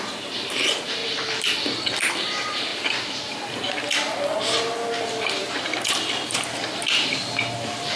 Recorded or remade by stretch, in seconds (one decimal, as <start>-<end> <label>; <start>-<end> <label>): 0.0-1.0 remade; 1.0-2.1 recorded; 2.1-2.7 remade; 2.7-5.4 recorded; 5.4-8.0 remade